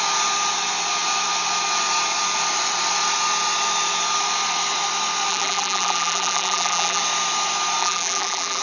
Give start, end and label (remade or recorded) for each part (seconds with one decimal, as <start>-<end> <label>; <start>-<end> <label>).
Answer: 0.0-5.3 recorded; 5.3-7.0 remade; 7.0-7.8 recorded; 7.8-8.6 remade